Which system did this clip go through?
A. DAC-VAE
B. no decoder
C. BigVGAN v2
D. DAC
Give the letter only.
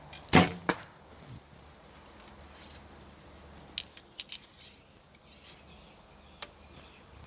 B